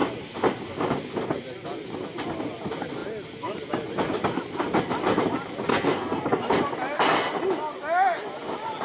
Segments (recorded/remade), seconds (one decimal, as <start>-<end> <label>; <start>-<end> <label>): 0.0-5.7 recorded; 5.7-6.2 remade; 6.2-8.8 recorded